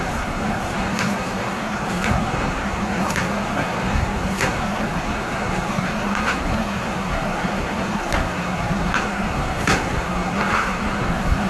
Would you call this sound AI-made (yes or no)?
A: yes